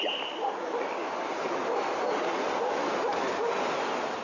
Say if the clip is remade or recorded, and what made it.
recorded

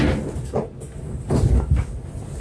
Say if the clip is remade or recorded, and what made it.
recorded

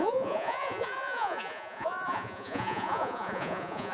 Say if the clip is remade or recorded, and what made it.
remade, vocoder, Vocos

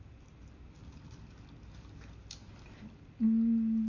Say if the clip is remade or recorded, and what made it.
recorded